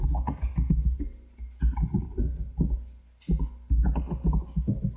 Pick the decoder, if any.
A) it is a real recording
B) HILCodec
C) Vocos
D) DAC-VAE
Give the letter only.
A